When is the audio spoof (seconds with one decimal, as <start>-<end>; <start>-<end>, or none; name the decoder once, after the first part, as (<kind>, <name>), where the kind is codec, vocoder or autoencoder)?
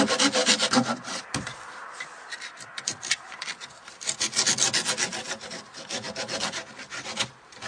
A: none